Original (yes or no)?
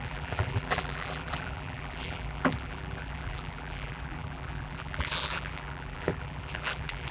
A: no